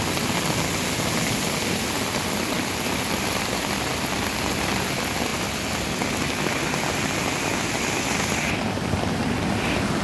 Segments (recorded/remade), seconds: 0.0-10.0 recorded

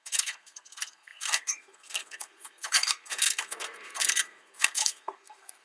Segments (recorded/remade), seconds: 0.0-5.6 remade

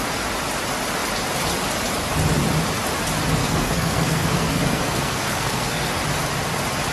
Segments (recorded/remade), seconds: 0.0-3.4 recorded; 3.4-5.9 remade; 5.9-6.9 recorded

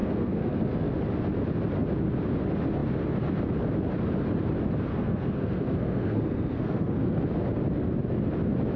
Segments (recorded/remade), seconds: 0.0-0.9 remade; 0.9-4.9 recorded; 4.9-7.2 remade; 7.2-8.8 recorded

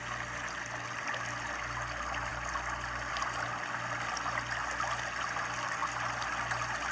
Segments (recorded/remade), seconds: 0.0-6.9 recorded

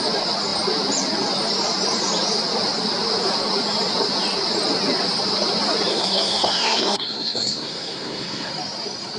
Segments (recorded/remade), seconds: 0.0-5.9 recorded; 5.9-8.5 remade; 8.5-9.2 recorded

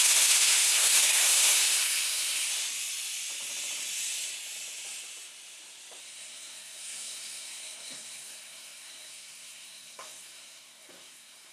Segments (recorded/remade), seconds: 0.0-2.5 remade; 2.5-6.0 recorded; 6.0-11.5 remade